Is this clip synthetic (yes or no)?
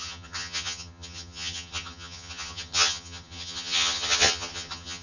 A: yes